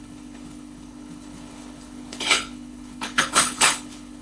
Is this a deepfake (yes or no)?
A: yes